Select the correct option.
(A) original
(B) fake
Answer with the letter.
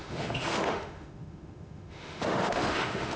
B